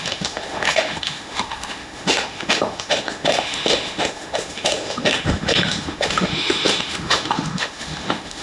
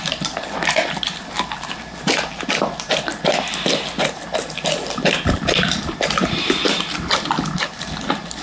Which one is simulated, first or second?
first